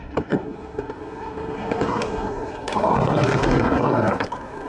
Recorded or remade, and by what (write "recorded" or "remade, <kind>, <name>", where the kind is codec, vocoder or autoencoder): remade, codec, SNAC